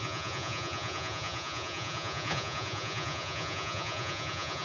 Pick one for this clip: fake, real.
fake